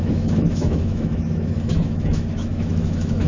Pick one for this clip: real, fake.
fake